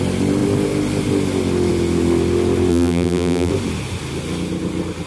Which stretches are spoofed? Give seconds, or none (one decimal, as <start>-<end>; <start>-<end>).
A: 2.7-3.5